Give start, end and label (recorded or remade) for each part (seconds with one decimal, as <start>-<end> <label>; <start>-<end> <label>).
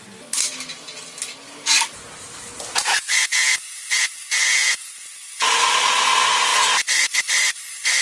0.0-2.7 recorded; 2.7-4.9 remade; 4.9-8.0 recorded